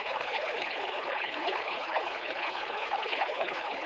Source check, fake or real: fake